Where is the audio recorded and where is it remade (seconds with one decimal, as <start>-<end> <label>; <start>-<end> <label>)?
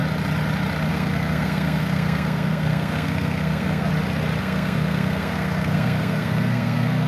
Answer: 0.0-0.9 recorded; 0.9-3.9 remade; 3.9-4.4 recorded; 4.4-7.1 remade